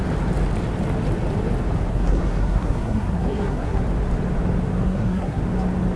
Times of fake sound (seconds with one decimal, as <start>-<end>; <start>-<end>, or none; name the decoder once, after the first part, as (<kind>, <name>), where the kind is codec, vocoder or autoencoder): 1.9-3.8 (codec, SNAC); 4.8-5.4